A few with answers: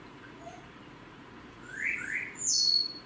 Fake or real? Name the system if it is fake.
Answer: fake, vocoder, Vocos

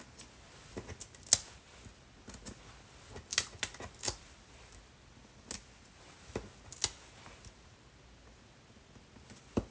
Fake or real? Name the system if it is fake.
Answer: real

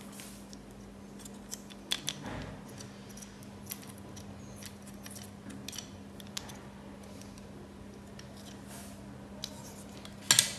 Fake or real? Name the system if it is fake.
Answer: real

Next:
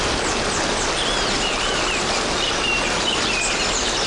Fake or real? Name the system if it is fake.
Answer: real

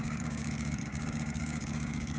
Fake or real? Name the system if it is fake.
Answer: fake, codec, DAC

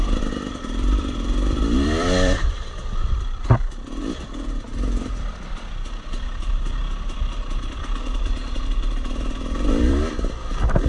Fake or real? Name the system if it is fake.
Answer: fake, vocoder, BigVGAN v2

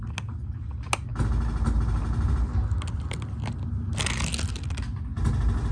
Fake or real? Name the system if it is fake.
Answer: real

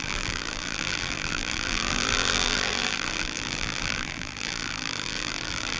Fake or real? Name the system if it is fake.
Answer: fake, vocoder, BigVGAN v2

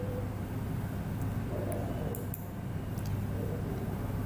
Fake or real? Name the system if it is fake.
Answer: real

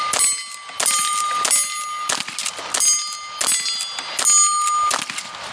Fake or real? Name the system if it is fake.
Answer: real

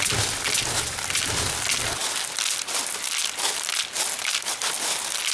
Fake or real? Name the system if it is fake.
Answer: real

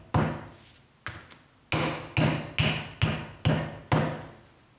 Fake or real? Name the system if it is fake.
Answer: real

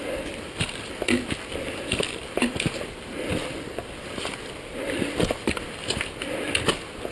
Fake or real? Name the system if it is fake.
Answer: fake, vocoder, BigVGAN v2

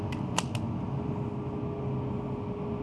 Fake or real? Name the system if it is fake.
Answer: real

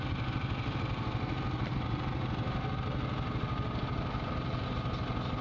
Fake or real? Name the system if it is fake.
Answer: real